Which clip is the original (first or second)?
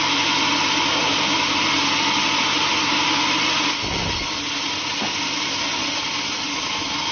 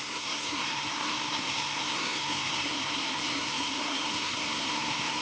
first